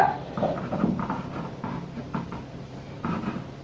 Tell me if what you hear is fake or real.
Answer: fake